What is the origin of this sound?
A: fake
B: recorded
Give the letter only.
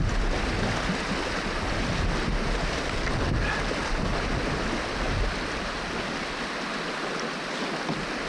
B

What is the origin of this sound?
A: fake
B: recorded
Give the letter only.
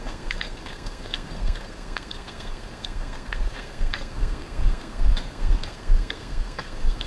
A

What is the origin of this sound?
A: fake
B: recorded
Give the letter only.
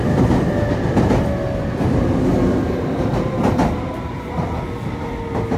B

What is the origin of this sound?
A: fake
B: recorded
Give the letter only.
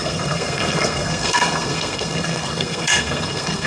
A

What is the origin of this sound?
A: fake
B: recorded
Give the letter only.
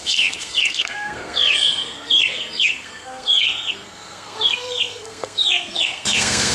A